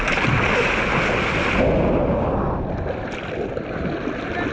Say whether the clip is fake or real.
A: real